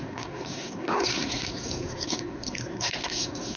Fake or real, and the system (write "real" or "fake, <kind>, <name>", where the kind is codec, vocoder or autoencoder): fake, codec, SNAC